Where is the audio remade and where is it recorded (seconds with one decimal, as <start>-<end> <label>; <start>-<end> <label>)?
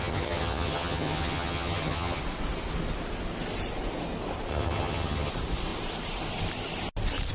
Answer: 0.0-2.2 remade; 2.2-4.5 recorded; 4.5-5.3 remade; 5.3-7.3 recorded